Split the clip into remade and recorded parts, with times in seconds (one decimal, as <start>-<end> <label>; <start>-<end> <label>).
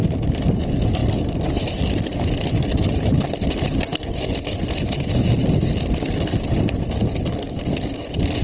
0.0-0.6 remade; 0.6-1.0 recorded; 1.0-2.5 remade; 2.5-8.4 recorded